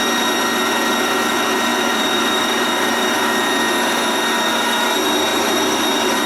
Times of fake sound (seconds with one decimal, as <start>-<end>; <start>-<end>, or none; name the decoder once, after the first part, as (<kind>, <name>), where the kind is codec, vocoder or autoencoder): 1.7-3.4 (vocoder, BigVGAN v2); 5.3-6.3